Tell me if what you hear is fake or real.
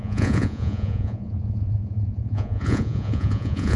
fake